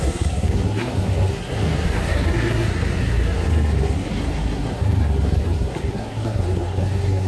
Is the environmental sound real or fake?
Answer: fake